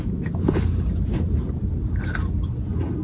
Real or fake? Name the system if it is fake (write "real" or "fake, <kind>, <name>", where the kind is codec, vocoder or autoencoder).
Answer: real